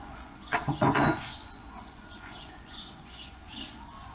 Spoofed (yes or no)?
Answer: yes